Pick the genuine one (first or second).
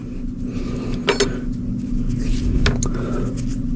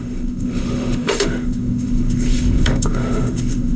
first